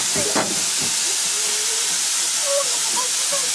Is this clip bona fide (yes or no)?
yes